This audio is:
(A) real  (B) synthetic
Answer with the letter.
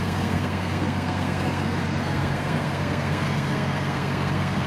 B